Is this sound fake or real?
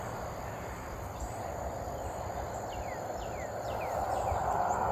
real